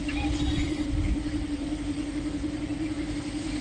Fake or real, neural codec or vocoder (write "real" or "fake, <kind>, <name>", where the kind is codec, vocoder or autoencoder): fake, vocoder, BigVGAN v2